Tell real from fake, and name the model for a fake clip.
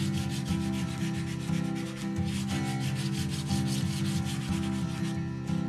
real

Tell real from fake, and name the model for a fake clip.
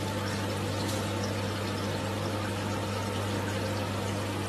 real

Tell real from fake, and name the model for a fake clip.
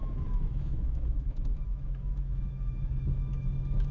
fake, autoencoder, DAC-VAE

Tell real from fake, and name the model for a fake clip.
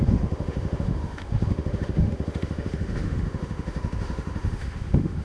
fake, autoencoder, DAC-VAE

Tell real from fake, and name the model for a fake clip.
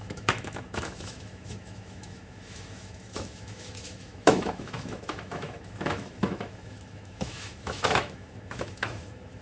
fake, autoencoder, DAC-VAE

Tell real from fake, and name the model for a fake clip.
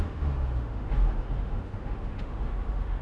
fake, autoencoder, DAC-VAE